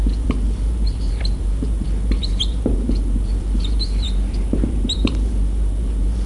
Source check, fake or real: fake